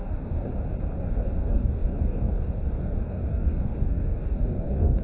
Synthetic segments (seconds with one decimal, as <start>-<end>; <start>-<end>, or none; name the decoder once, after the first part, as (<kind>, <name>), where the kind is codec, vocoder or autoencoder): 0.0-0.5 (codec, DAC); 1.0-5.0